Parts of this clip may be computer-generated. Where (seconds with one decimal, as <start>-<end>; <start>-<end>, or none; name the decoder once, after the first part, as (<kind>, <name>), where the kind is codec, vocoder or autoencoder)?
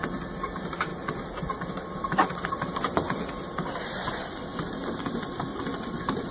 0.0-0.9 (vocoder, BigVGAN v2); 1.4-5.5